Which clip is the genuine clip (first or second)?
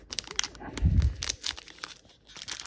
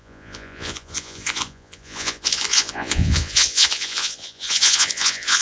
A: first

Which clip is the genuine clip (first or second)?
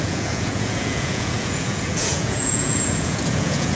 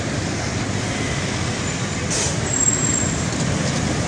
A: second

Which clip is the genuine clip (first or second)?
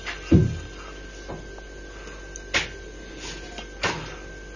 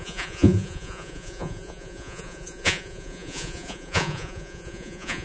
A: first